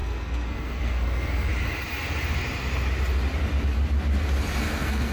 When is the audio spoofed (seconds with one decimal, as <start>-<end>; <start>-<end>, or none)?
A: 0.0-1.5; 4.6-5.1